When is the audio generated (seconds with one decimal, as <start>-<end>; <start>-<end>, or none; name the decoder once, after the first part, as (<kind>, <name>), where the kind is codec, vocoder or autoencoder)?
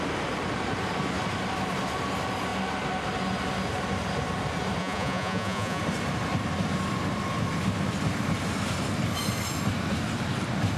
4.8-5.8 (vocoder, Vocos)